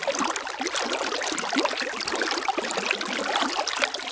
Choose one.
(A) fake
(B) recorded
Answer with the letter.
B